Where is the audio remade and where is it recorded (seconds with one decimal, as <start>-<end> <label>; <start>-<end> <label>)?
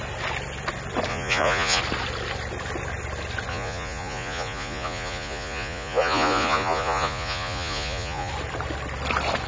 0.0-1.1 recorded; 1.1-1.8 remade; 1.8-3.5 recorded; 3.5-8.3 remade; 8.3-9.5 recorded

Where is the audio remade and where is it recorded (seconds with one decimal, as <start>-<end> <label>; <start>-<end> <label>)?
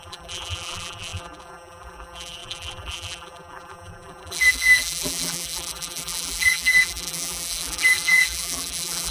0.0-9.1 remade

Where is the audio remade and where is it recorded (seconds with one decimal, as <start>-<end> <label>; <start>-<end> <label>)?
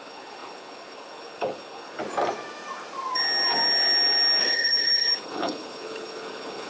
0.0-2.0 remade; 2.0-4.4 recorded; 4.4-6.7 remade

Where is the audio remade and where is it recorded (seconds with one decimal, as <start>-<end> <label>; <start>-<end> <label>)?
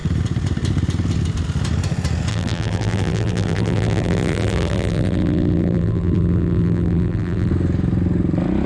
0.0-2.3 recorded; 2.3-7.5 remade; 7.5-8.7 recorded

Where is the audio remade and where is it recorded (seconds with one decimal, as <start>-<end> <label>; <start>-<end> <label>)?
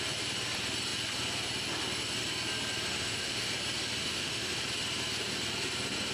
0.0-2.9 recorded; 2.9-3.5 remade; 3.5-4.0 recorded; 4.0-4.6 remade; 4.6-6.1 recorded